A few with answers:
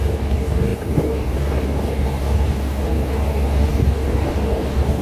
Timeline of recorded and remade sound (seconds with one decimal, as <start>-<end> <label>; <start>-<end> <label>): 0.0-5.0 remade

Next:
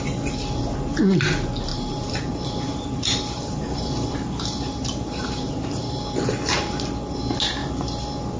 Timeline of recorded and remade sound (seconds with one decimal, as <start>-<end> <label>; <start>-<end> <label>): 0.0-1.7 recorded; 1.7-6.7 remade; 6.7-8.4 recorded

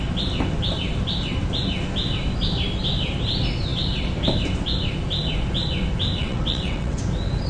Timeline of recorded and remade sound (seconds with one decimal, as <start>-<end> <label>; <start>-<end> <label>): 0.0-6.2 recorded; 6.2-7.0 remade; 7.0-7.5 recorded

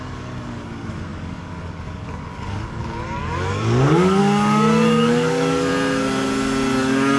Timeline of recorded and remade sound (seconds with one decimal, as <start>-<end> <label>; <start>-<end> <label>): 0.0-5.7 remade; 5.7-6.8 recorded; 6.8-7.2 remade

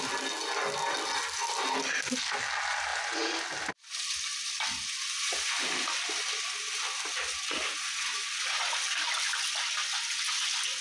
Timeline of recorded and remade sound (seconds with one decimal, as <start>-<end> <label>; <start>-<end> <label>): 0.0-10.8 recorded